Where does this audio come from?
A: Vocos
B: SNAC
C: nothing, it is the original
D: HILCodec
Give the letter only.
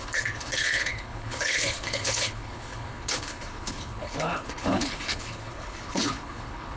D